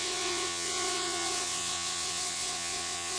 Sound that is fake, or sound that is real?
fake